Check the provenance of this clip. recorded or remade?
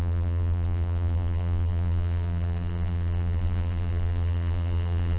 remade